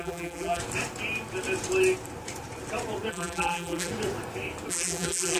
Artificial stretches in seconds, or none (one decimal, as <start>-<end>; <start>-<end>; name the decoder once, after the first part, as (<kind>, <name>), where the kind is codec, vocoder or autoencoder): 0.0-0.6 (vocoder, BigVGAN v2); 3.1-3.9; 4.7-5.4